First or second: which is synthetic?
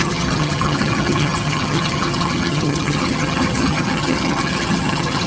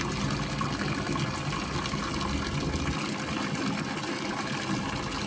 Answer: first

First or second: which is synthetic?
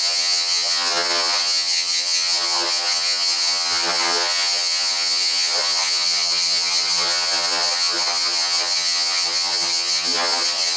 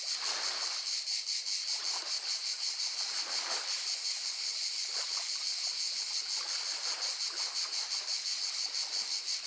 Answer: first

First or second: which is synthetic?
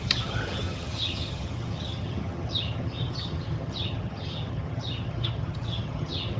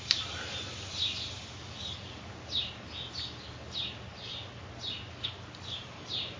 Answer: first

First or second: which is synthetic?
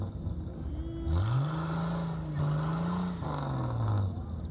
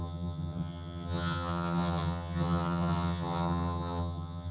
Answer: second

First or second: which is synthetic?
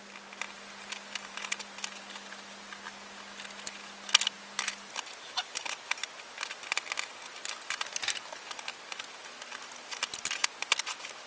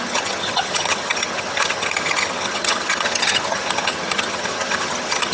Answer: second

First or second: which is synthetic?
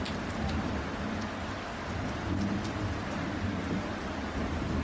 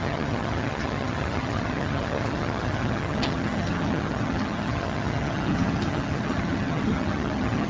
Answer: second